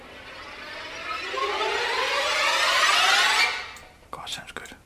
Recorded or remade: recorded